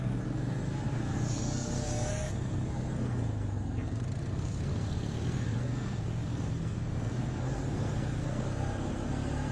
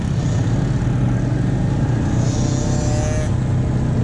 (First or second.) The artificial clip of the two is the first